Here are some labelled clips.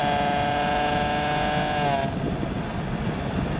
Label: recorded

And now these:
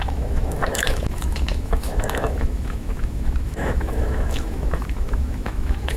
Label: remade